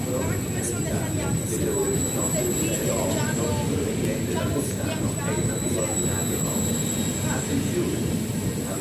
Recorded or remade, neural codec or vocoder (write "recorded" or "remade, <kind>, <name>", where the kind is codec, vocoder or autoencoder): recorded